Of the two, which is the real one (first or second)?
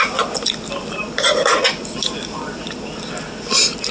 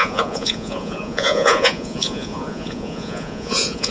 first